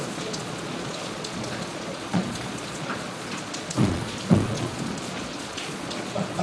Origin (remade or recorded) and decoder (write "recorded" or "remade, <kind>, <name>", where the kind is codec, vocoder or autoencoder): remade, vocoder, Vocos